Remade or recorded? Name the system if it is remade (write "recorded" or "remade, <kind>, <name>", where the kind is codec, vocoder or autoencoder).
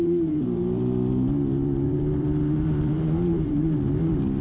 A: remade, vocoder, BigVGAN v2